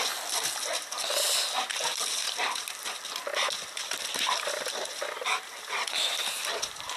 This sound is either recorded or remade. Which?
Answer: recorded